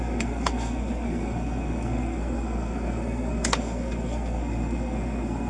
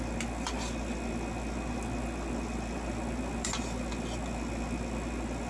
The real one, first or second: second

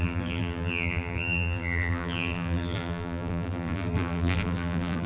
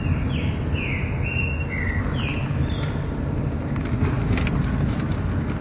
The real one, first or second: second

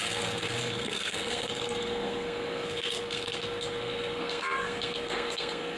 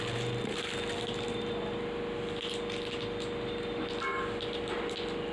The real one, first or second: second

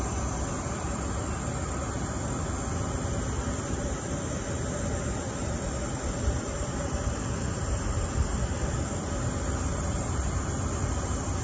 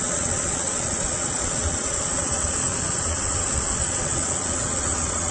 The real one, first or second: first